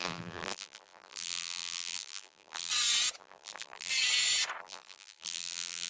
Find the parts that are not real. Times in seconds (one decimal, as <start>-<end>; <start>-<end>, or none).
0.0-2.7; 3.2-3.9; 4.6-5.9